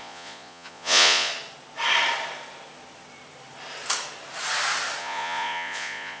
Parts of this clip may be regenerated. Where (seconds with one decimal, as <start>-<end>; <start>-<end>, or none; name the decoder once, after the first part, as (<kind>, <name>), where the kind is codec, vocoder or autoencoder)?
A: 0.0-1.3 (vocoder, Vocos); 5.0-6.2